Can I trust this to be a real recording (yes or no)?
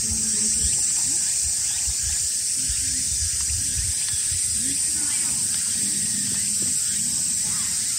yes